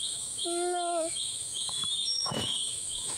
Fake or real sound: fake